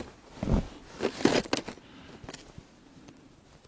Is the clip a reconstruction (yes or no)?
no